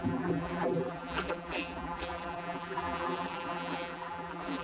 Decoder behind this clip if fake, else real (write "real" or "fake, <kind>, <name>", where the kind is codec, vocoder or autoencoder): fake, vocoder, BigVGAN v2